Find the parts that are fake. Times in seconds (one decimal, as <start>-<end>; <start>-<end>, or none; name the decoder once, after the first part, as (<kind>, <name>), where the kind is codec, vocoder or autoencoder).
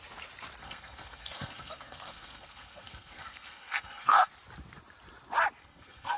0.6-4.3 (codec, SNAC); 5.6-6.2